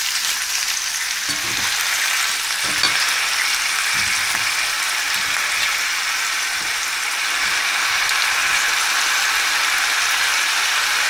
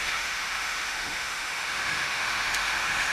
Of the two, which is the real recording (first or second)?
first